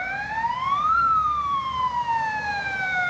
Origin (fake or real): fake